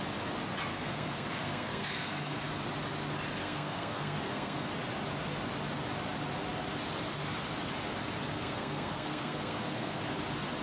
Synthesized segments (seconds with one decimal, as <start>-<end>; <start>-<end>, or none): 0.7-2.5; 3.4-4.7; 8.3-10.0

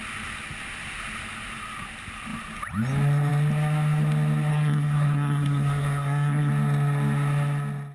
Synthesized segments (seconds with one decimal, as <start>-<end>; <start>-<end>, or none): 4.5-6.5

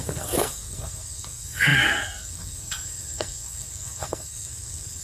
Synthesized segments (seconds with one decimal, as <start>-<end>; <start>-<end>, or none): 0.0-5.0

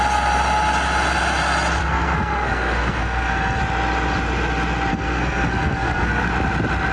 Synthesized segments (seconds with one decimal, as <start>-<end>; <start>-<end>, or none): 1.8-3.6; 4.9-6.2